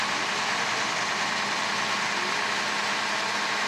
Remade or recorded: recorded